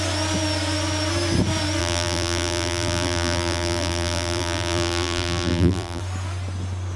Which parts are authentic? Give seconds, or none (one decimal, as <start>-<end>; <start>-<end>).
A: 0.0-1.8; 6.0-7.0